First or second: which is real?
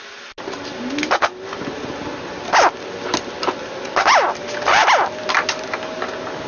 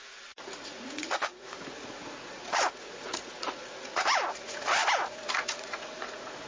first